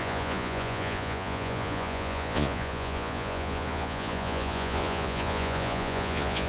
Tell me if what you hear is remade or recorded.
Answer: remade